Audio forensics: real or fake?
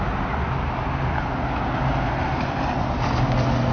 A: real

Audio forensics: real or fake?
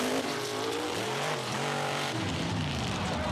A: fake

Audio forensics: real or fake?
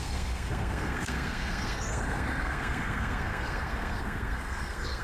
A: fake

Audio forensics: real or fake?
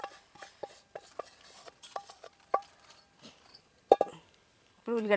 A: fake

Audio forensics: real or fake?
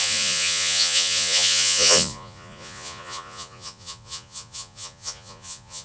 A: fake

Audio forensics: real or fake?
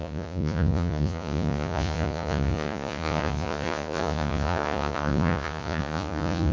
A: fake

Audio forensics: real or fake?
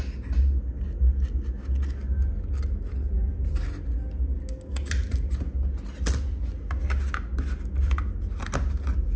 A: real